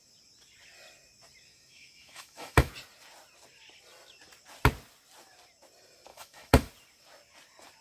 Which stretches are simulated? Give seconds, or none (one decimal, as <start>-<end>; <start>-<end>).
1.5-2.7; 6.1-6.7